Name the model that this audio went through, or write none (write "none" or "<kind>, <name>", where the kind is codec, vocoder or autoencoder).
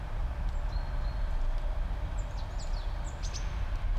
none